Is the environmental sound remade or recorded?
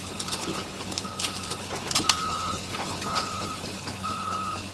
remade